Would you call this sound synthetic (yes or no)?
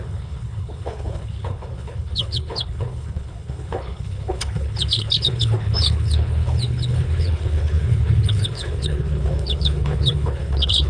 yes